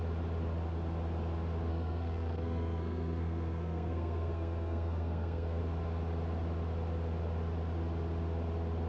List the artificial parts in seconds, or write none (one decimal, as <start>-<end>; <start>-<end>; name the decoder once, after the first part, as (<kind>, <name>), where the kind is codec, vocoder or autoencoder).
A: 1.7-5.6 (codec, SNAC)